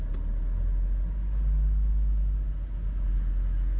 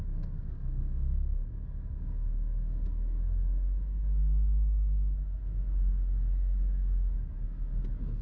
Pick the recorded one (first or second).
first